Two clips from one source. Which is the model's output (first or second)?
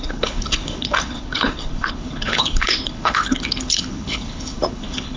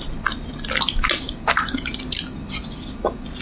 first